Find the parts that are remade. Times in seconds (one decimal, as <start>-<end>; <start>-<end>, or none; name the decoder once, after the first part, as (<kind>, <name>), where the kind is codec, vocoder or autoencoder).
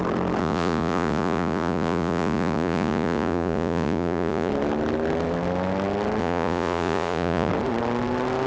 0.4-4.5 (vocoder, Vocos); 6.2-7.5